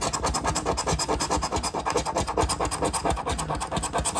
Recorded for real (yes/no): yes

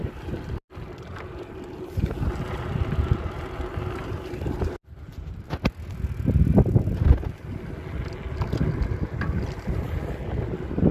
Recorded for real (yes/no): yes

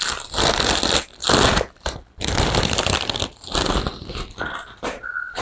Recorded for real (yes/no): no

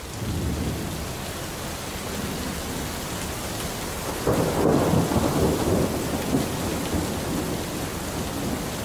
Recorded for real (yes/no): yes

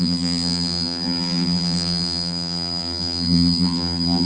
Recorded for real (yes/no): no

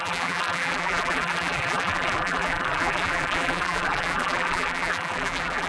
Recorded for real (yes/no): no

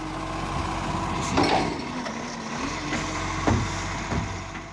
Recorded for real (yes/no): yes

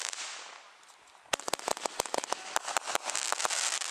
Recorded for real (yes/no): yes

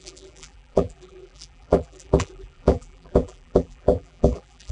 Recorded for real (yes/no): no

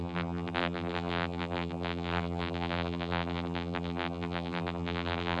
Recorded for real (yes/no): no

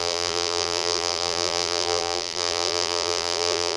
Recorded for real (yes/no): no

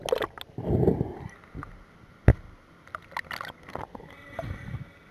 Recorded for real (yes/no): yes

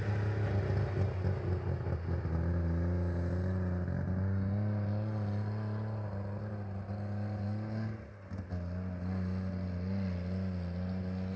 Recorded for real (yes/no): yes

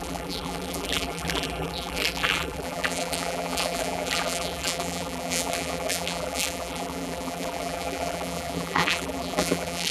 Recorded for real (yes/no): no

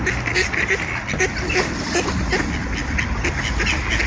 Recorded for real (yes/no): yes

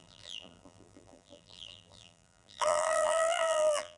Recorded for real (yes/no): no